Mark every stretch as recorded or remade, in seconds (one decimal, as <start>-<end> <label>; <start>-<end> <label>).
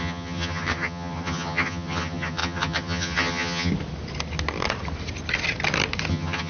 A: 0.0-3.7 remade; 3.7-6.1 recorded; 6.1-6.5 remade